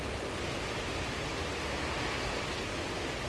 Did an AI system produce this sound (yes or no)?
no